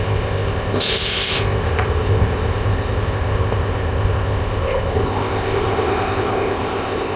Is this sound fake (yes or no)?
yes